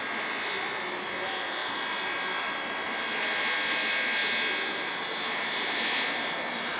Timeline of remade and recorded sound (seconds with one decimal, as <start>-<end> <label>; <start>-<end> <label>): 0.0-6.8 recorded